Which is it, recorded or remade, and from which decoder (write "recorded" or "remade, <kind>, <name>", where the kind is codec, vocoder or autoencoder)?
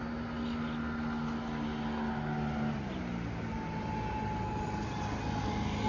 recorded